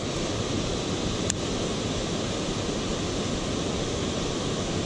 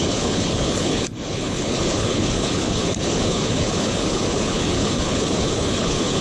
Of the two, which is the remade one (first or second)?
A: second